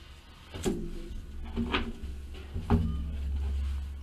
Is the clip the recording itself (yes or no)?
yes